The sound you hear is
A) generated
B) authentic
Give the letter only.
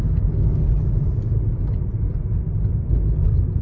B